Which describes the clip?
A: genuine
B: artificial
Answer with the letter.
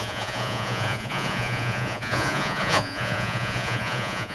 B